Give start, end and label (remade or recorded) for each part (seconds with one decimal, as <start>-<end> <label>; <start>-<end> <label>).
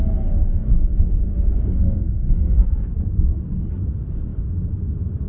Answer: 0.0-0.5 recorded; 0.5-3.7 remade; 3.7-5.3 recorded